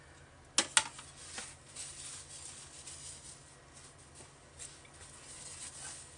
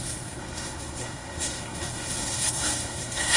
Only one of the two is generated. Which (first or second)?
second